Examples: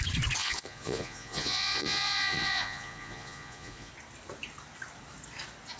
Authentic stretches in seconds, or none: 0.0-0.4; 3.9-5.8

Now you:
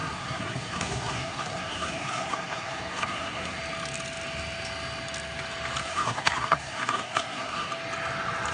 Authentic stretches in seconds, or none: 3.6-5.8; 7.7-8.5

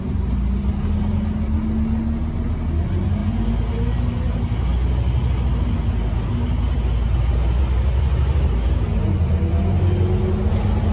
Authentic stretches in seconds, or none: 0.0-10.9

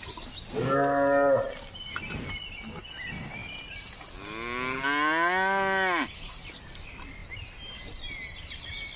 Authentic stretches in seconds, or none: 0.0-9.0

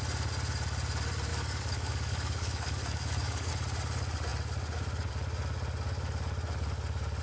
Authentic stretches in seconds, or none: 0.0-1.3; 3.5-7.2